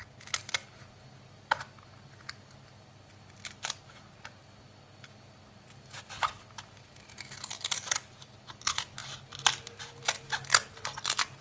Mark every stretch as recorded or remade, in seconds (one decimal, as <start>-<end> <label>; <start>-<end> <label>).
0.0-11.4 recorded